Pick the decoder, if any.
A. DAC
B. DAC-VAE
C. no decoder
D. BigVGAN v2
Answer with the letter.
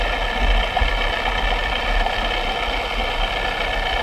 C